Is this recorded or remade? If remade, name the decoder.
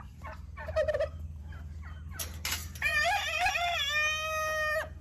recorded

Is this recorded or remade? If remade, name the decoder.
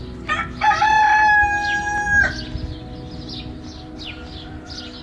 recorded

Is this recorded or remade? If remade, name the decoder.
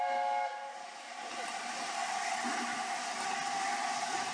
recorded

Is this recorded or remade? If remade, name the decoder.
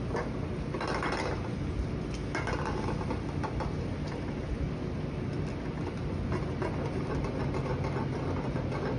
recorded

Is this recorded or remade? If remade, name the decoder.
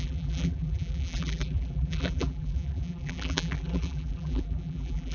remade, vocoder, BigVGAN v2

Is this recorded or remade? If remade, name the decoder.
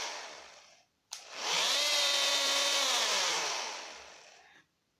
remade, vocoder, BigVGAN v2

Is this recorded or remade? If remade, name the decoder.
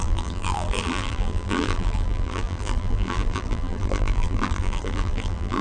remade, vocoder, BigVGAN v2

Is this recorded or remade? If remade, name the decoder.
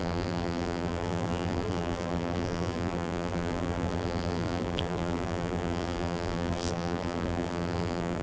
remade, vocoder, BigVGAN v2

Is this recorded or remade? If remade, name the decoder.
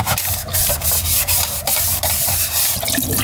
remade, vocoder, BigVGAN v2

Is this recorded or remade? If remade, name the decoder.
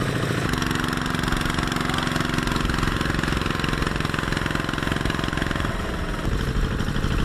recorded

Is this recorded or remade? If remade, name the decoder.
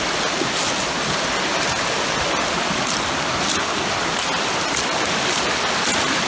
recorded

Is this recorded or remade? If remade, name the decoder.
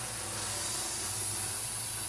recorded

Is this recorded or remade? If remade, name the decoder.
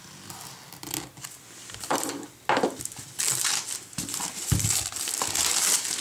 recorded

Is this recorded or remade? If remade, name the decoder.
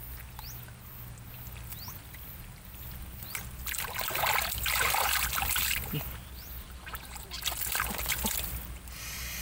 recorded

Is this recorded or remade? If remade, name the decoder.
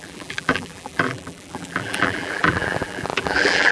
remade, vocoder, BigVGAN v2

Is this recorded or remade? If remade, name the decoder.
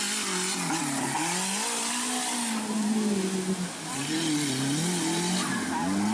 recorded